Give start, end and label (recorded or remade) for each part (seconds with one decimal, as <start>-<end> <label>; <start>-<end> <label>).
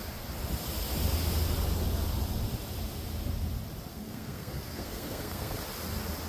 0.0-3.9 recorded; 3.9-5.5 remade; 5.5-6.3 recorded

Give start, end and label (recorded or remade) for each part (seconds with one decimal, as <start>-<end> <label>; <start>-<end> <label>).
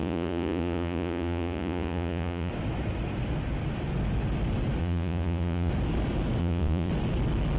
0.0-2.5 remade; 2.5-4.8 recorded; 4.8-5.7 remade; 5.7-6.4 recorded; 6.4-6.9 remade; 6.9-7.6 recorded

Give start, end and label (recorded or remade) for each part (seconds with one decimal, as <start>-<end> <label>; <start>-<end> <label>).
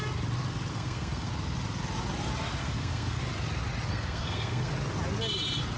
0.0-0.7 recorded; 0.7-1.3 remade; 1.3-2.6 recorded; 2.6-3.2 remade; 3.2-3.9 recorded; 3.9-4.7 remade; 4.7-5.8 recorded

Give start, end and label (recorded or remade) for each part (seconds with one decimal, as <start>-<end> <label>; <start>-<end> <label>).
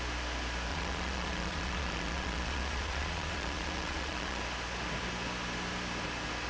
0.0-0.7 recorded; 0.7-4.4 remade; 4.4-6.5 recorded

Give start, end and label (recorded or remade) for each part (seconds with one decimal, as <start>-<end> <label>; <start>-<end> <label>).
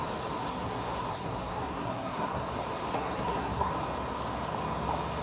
0.0-0.4 recorded; 0.4-2.5 remade; 2.5-2.9 recorded; 2.9-3.7 remade; 3.7-5.2 recorded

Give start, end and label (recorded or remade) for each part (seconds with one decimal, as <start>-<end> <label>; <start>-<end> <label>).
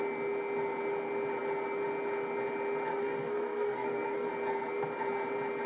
0.0-2.9 recorded; 2.9-4.3 remade; 4.3-5.7 recorded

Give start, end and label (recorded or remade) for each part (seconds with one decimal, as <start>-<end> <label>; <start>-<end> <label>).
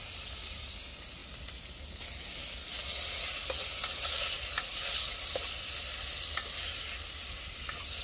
0.0-8.0 recorded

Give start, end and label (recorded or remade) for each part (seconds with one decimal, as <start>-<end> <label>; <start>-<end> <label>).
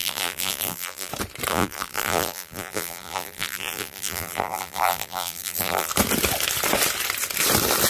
0.0-1.1 remade; 1.1-1.5 recorded; 1.5-5.9 remade; 5.9-7.9 recorded